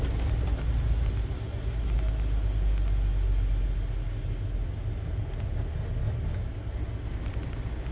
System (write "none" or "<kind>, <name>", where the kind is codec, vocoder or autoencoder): none